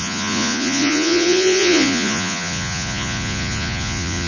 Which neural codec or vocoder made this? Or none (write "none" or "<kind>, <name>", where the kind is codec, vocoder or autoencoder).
vocoder, Vocos